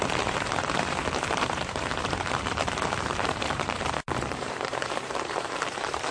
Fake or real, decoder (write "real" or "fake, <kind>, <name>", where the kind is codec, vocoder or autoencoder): fake, vocoder, BigVGAN v2